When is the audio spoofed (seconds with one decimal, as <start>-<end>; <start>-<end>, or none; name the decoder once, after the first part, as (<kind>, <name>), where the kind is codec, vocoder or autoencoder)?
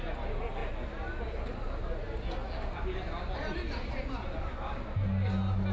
none